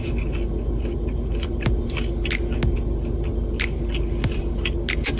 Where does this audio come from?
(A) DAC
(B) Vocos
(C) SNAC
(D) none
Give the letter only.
D